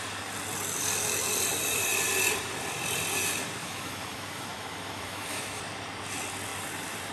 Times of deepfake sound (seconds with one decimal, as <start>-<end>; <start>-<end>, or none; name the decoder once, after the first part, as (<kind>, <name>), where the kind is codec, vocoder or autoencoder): 3.6-5.6 (autoencoder, DAC-VAE)